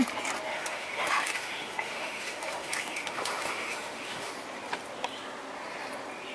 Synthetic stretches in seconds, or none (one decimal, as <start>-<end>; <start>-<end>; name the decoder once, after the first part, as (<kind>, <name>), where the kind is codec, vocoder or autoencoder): 0.5-4.3 (autoencoder, DAC-VAE)